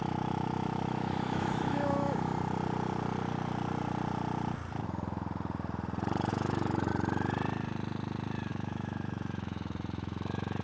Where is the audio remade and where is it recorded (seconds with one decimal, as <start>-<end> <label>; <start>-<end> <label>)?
0.0-2.3 remade; 2.3-6.3 recorded; 6.3-6.9 remade; 6.9-8.5 recorded; 8.5-10.6 remade